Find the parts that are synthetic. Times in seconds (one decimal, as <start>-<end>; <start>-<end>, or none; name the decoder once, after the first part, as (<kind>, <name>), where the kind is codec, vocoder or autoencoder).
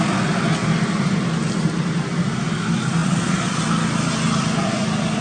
3.0-3.6 (vocoder, Vocos)